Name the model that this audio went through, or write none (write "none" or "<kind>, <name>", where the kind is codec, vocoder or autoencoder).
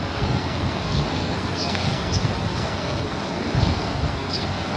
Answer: codec, SNAC